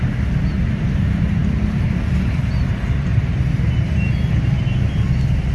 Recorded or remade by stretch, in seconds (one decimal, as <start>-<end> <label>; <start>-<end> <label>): 0.0-5.5 recorded